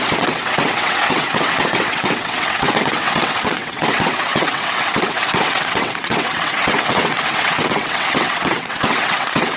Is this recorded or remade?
remade